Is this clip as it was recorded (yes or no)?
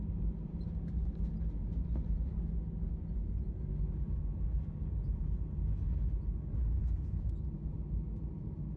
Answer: yes